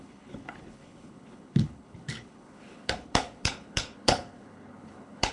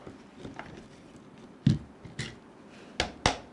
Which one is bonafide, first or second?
second